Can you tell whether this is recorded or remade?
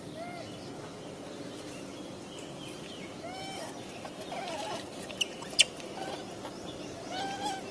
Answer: recorded